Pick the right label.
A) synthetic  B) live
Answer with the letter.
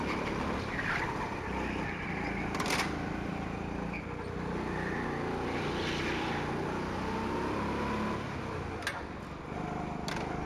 B